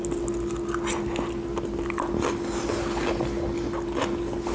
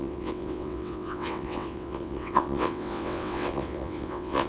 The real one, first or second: first